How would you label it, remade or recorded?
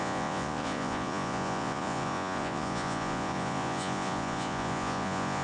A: remade